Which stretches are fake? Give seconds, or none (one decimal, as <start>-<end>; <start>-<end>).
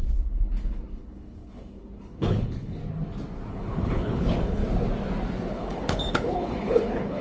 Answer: 0.0-2.8; 3.5-4.6; 5.5-7.2